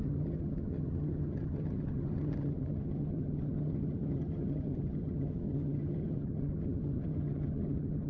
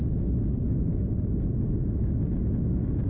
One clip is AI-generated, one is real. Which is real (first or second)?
second